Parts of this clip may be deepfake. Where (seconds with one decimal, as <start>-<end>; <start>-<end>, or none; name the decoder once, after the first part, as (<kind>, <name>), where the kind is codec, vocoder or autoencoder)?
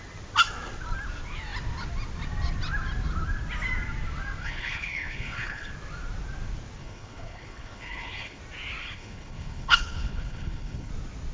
4.4-5.7 (codec, HILCodec); 6.8-8.4; 8.8-10.9